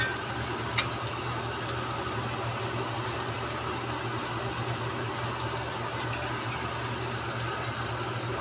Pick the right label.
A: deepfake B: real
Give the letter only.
B